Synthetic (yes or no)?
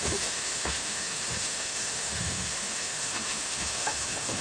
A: yes